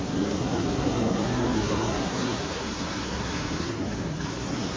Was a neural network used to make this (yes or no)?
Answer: yes